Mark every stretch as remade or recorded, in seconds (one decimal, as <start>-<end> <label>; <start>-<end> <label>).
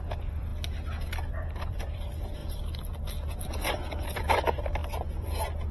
0.0-0.5 remade; 0.5-1.3 recorded; 1.3-2.4 remade; 2.4-3.7 recorded; 3.7-4.8 remade; 4.8-5.7 recorded